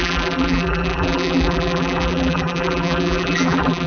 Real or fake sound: fake